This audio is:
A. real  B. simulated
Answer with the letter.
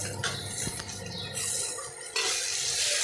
A